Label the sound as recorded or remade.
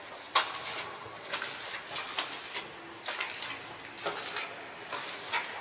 recorded